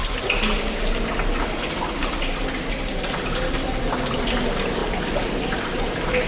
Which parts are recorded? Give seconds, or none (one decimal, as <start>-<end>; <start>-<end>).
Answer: 0.0-6.3